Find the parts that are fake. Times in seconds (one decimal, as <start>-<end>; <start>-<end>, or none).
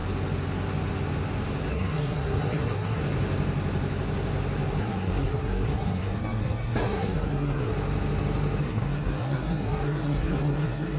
1.7-3.0; 4.8-7.7; 8.6-11.0